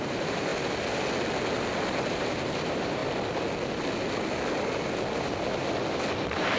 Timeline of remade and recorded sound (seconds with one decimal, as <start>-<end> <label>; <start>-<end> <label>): 0.0-0.5 remade; 0.5-1.9 recorded; 1.9-3.0 remade; 3.0-6.6 recorded